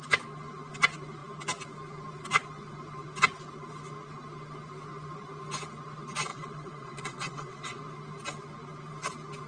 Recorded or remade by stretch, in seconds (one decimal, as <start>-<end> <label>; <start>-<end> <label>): 0.0-6.3 recorded; 6.3-7.8 remade; 7.8-9.5 recorded